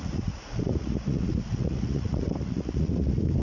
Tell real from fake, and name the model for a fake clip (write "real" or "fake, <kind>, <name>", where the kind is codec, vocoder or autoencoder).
fake, vocoder, Vocos